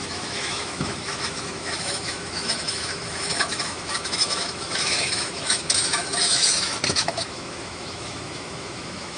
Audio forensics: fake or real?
fake